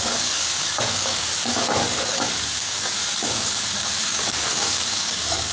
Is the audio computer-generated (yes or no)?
yes